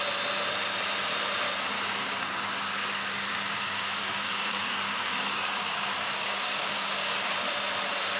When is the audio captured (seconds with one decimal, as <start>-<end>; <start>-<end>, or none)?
0.0-3.3; 7.2-8.2